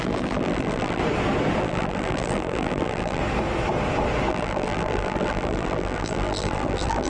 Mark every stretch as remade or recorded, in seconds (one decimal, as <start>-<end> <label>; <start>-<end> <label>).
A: 0.0-1.0 remade; 1.0-1.6 recorded; 1.6-3.2 remade; 3.2-4.3 recorded; 4.3-7.1 remade

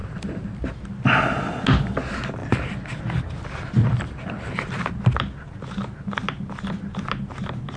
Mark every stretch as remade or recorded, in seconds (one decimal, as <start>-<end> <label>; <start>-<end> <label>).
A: 0.0-0.6 remade; 0.6-2.4 recorded; 2.4-3.0 remade; 3.0-3.8 recorded; 3.8-4.7 remade; 4.7-7.8 recorded

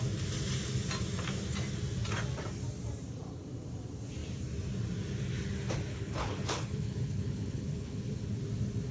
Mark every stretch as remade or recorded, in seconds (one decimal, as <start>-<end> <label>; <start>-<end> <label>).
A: 0.0-5.9 recorded; 5.9-8.4 remade; 8.4-8.9 recorded

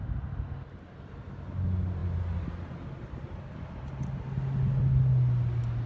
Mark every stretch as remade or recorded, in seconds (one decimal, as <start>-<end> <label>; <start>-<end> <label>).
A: 0.0-5.9 recorded

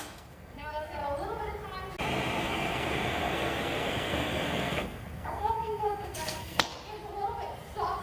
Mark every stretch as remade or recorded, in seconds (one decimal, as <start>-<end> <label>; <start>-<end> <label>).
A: 0.0-1.0 remade; 1.0-2.4 recorded; 2.4-6.7 remade; 6.7-8.0 recorded

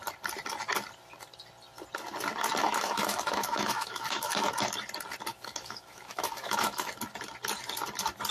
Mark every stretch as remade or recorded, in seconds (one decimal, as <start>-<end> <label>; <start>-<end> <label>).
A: 0.0-2.6 recorded; 2.6-4.6 remade; 4.6-5.3 recorded; 5.3-6.9 remade; 6.9-8.3 recorded

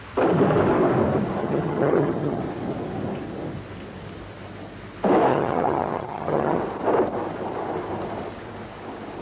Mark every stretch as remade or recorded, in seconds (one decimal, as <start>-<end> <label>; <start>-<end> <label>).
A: 0.0-1.4 recorded; 1.4-2.4 remade; 2.4-5.3 recorded; 5.3-6.6 remade; 6.6-9.2 recorded

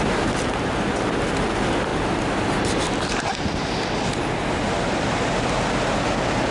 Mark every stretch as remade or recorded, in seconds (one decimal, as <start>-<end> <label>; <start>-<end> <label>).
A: 0.0-1.9 recorded; 1.9-4.5 remade; 4.5-6.5 recorded